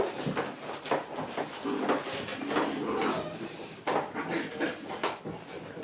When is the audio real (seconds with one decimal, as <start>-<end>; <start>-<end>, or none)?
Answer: 0.0-5.8